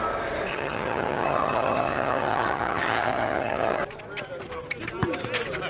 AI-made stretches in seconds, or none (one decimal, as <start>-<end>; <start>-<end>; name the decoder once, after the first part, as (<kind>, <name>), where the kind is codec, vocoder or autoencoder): 0.5-3.8 (vocoder, HiFi-GAN)

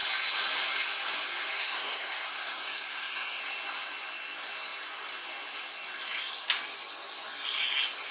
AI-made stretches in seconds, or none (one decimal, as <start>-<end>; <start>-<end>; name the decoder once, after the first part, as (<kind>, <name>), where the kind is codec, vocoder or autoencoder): 1.6-3.4 (codec, SNAC)

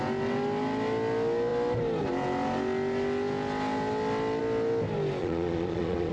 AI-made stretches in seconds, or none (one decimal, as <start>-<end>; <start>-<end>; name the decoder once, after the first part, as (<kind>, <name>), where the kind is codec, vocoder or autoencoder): 5.2-6.1 (vocoder, Vocos)

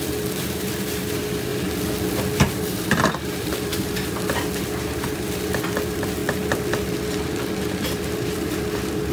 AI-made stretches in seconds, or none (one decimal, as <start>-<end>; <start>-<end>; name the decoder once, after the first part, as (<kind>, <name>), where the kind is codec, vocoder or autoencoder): 0.0-1.5 (vocoder, BigVGAN v2); 2.4-9.1

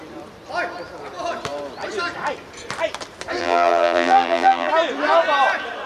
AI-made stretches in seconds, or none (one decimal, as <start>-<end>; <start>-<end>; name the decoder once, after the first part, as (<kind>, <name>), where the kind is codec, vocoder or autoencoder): 3.4-4.7 (vocoder, BigVGAN v2)